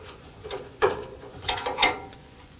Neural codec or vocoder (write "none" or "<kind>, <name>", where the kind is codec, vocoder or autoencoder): vocoder, Vocos